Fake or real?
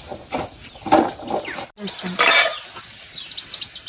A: real